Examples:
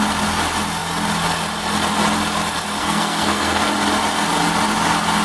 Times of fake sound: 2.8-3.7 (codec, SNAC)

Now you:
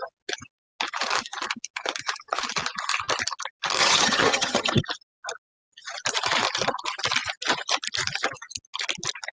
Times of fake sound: 3.8-4.8 (vocoder, HiFi-GAN)

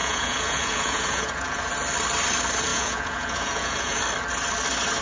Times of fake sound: 0.0-1.7 (vocoder, Vocos); 2.7-4.0

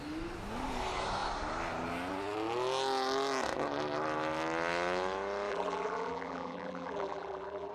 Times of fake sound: 5.5-7.7 (vocoder, BigVGAN v2)

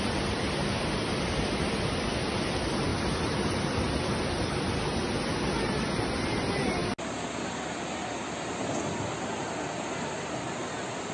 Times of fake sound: none

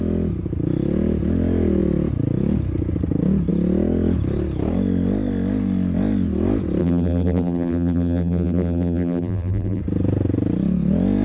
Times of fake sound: 6.8-9.8 (vocoder, BigVGAN v2)

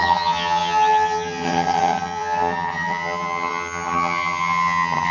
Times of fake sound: 0.0-5.1 (vocoder, HiFi-GAN)